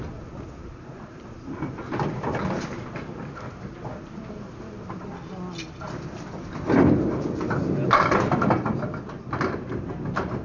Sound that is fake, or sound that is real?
real